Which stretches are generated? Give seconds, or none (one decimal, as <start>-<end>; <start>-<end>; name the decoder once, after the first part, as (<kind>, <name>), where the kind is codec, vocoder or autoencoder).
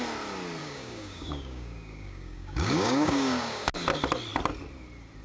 0.6-3.7 (codec, DAC)